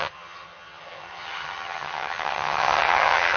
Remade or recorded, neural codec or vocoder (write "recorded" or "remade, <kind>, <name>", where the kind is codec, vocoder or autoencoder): remade, vocoder, HiFi-GAN